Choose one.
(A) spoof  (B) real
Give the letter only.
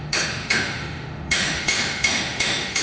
A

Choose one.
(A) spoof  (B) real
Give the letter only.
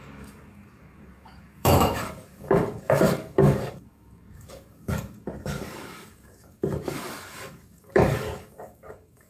A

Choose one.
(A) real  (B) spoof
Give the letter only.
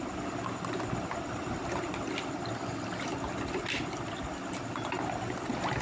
A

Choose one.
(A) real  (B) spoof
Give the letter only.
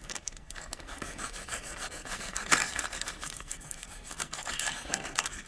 B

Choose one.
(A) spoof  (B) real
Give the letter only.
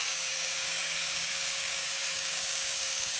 A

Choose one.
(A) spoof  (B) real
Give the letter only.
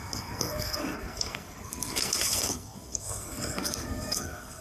A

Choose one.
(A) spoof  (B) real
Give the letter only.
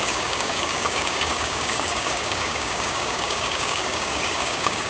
A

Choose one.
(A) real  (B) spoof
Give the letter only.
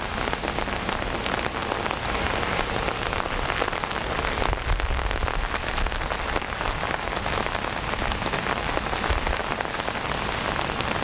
A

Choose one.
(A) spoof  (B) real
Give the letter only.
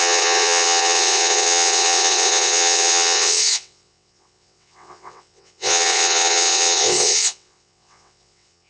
A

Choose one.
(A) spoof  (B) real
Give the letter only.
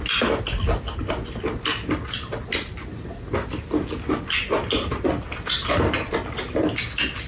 B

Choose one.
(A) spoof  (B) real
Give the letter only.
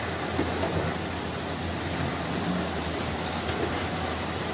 B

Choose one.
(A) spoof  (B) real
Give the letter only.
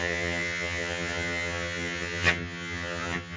A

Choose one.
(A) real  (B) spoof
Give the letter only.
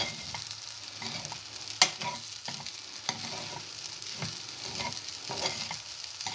A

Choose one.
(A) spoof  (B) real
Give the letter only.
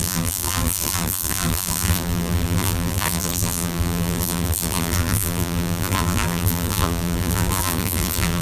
A